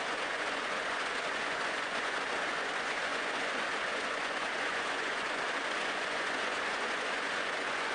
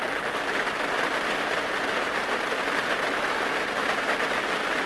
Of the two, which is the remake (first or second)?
first